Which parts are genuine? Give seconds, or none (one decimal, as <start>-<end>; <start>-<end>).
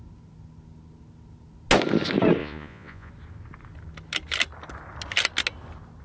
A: 0.0-2.4; 3.1-6.0